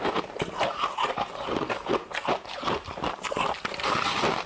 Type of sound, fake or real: real